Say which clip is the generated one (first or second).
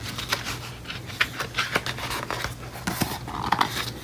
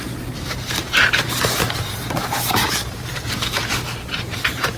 second